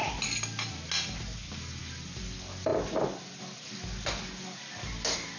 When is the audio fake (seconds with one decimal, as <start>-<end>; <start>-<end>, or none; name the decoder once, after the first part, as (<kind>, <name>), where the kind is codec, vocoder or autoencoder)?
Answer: none